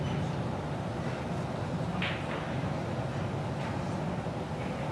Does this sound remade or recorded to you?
recorded